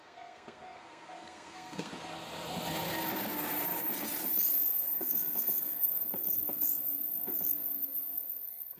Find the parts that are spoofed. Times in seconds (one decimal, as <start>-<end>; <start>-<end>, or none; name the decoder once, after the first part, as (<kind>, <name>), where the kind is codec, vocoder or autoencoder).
0.0-1.9 (codec, SNAC); 5.0-8.8

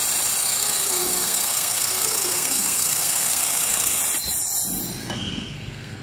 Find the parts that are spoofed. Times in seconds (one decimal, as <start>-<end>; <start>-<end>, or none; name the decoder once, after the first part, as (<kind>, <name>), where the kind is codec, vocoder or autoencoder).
0.4-4.0 (codec, SNAC); 5.0-6.0

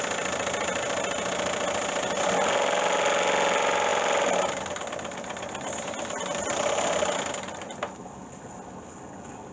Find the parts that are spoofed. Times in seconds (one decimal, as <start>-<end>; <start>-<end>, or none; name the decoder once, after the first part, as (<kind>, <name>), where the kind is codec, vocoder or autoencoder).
none

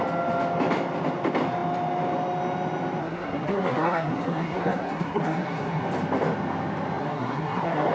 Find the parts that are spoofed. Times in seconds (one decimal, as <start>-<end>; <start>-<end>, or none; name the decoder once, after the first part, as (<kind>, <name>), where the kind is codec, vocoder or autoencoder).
3.0-5.8 (codec, SNAC); 7.0-7.9

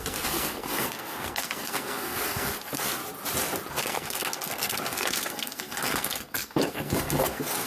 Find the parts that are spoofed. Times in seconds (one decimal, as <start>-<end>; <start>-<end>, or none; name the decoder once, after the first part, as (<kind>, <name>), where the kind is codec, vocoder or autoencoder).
0.0-3.0 (codec, SNAC); 3.7-7.7

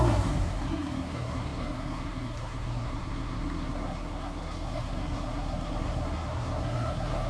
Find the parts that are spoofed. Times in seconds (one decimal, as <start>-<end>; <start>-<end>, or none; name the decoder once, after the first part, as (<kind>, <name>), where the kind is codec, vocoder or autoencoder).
0.0-7.3 (codec, SNAC)

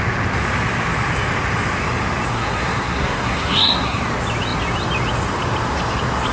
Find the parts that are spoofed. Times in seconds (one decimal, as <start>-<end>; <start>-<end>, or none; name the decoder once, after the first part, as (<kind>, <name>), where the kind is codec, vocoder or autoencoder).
2.3-4.0 (codec, SNAC)

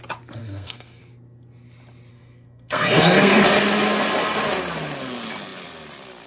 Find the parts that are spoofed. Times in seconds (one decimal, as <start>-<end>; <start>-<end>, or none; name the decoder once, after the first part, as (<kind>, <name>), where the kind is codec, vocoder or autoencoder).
0.4-1.0 (codec, SNAC); 2.1-3.4